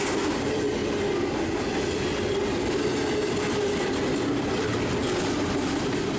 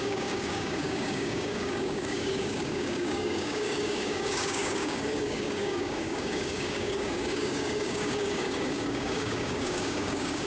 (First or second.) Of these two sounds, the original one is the first